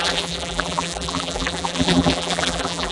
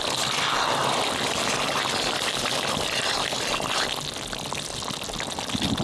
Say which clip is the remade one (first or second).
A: first